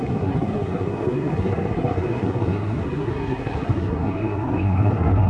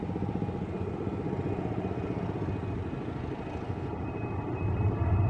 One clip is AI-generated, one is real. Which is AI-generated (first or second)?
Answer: first